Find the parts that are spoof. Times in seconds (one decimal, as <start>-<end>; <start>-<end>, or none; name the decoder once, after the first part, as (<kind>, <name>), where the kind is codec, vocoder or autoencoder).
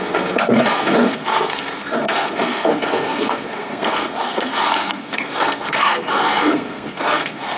0.0-7.6 (codec, SNAC)